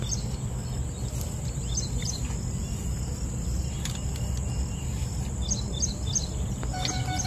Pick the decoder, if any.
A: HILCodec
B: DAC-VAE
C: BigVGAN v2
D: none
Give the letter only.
D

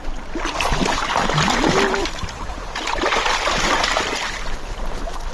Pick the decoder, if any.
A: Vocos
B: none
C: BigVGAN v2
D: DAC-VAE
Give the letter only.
C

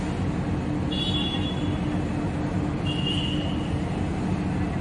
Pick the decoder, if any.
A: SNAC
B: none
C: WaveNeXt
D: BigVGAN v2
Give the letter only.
B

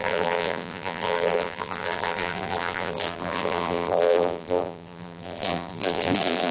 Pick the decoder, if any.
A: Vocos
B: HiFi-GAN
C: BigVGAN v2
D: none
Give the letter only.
C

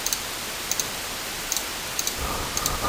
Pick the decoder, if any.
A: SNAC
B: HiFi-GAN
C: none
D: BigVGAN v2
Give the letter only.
D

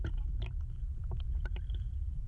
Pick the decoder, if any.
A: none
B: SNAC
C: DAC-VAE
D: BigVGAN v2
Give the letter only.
D